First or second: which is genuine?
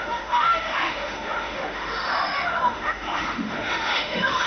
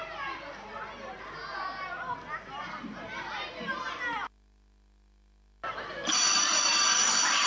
second